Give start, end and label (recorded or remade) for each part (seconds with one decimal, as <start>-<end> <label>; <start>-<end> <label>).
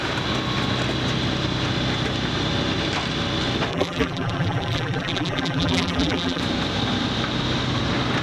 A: 0.0-3.7 recorded; 3.7-6.4 remade; 6.4-8.2 recorded